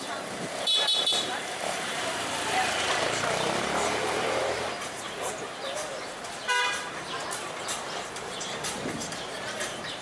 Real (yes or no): no